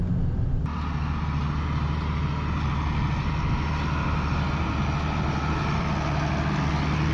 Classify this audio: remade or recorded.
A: recorded